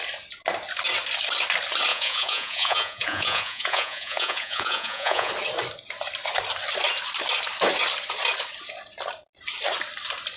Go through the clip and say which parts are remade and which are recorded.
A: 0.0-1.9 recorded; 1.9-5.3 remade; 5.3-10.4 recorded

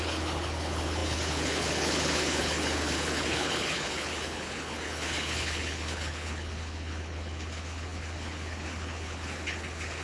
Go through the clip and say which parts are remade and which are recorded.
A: 0.0-10.0 remade

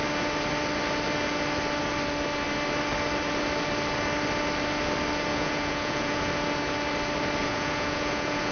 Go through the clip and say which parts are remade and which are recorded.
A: 0.0-5.3 recorded; 5.3-6.2 remade; 6.2-7.4 recorded; 7.4-8.5 remade

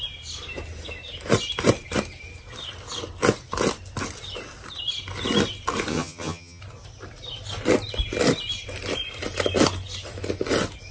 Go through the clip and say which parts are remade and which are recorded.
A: 0.0-5.9 recorded; 5.9-6.6 remade; 6.6-10.9 recorded

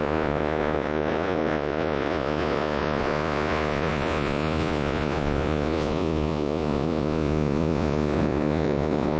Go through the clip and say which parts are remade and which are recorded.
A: 0.0-9.2 remade

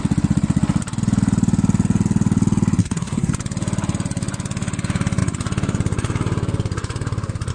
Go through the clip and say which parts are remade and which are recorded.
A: 0.0-2.8 recorded; 2.8-3.3 remade; 3.3-7.5 recorded

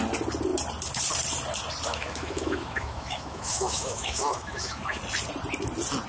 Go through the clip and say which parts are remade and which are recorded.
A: 0.0-1.9 recorded; 1.9-5.0 remade; 5.0-6.1 recorded

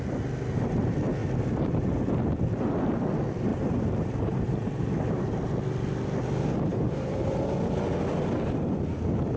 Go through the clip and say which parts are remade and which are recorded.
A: 0.0-1.2 recorded; 1.2-2.0 remade; 2.0-3.5 recorded; 3.5-5.4 remade; 5.4-6.7 recorded; 6.7-7.4 remade; 7.4-9.4 recorded